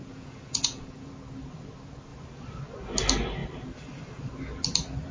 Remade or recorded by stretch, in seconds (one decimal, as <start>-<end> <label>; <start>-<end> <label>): 0.0-1.1 remade; 1.1-5.1 recorded